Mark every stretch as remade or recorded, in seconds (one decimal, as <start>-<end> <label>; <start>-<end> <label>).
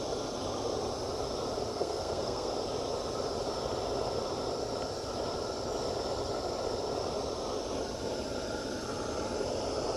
0.0-1.7 recorded; 1.7-2.5 remade; 2.5-10.0 recorded